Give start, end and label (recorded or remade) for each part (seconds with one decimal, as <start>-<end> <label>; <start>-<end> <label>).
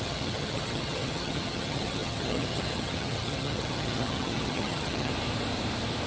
0.0-5.1 remade; 5.1-6.1 recorded